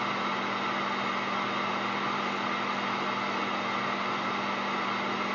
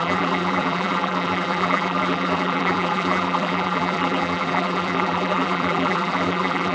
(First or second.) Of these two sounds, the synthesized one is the second